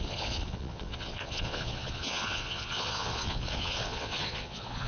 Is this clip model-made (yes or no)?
yes